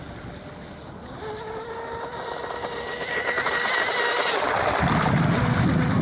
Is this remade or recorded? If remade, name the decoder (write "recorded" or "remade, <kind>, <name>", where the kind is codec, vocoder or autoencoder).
recorded